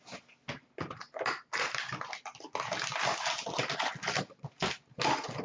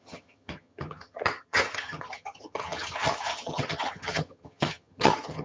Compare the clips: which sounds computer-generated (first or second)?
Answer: second